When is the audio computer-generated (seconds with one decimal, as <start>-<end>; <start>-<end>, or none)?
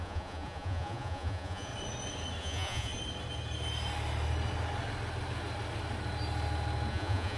0.0-1.7; 2.4-2.9; 6.9-7.4